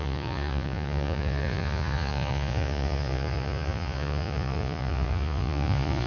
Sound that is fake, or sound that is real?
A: fake